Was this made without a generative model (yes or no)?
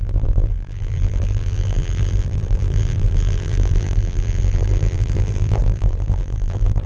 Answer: no